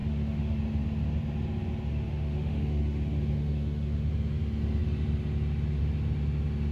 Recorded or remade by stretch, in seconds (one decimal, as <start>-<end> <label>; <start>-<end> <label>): 0.0-0.6 remade; 0.6-1.9 recorded; 1.9-4.1 remade; 4.1-6.7 recorded